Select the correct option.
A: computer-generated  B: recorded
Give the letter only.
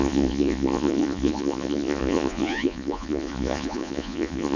A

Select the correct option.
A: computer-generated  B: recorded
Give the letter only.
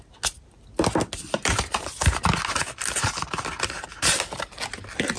B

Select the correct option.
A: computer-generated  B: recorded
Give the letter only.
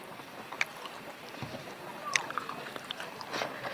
A